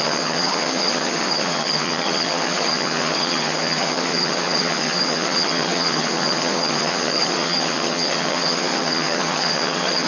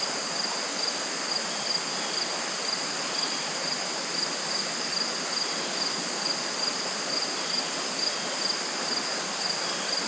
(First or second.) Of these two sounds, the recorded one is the second